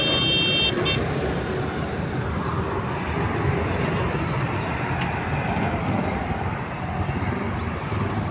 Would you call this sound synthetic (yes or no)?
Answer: no